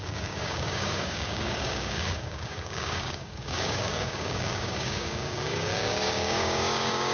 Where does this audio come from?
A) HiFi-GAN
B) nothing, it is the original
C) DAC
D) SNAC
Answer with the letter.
C